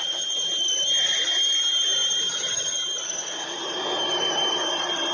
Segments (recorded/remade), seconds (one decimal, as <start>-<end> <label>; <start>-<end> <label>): 0.0-5.1 recorded